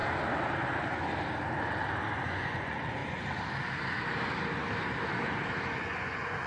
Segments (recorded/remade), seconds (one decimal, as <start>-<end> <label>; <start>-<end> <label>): 0.0-2.2 recorded; 2.2-3.0 remade; 3.0-5.7 recorded; 5.7-6.5 remade